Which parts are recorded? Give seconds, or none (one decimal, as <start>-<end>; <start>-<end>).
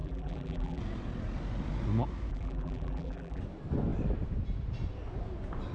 0.8-2.3; 3.4-5.7